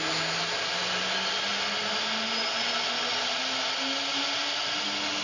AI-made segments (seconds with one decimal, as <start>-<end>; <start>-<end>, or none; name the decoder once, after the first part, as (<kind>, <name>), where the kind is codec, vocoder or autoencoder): none